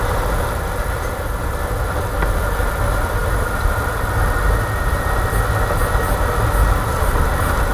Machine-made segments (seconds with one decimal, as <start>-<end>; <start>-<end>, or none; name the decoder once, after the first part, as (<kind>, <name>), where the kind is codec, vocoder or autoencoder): none